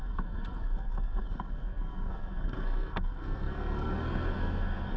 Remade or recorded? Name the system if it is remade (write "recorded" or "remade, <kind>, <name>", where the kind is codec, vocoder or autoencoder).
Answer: remade, codec, SNAC